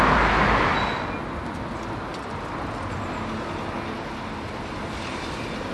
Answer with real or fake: real